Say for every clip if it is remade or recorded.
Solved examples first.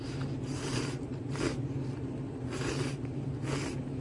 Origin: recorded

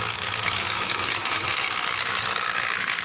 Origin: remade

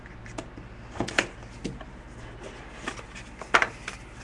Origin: recorded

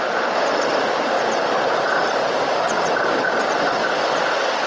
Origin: recorded